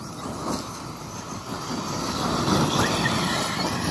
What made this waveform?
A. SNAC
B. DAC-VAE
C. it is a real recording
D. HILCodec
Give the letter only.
C